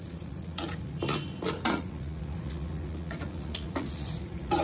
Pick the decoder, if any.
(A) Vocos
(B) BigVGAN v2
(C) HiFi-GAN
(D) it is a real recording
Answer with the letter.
A